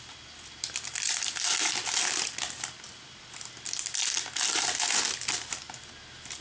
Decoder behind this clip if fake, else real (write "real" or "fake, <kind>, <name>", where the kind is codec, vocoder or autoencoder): real